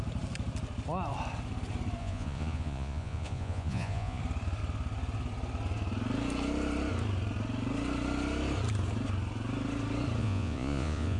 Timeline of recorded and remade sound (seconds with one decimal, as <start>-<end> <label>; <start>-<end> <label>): 0.0-2.0 recorded; 2.0-4.2 remade; 4.2-10.2 recorded; 10.2-11.2 remade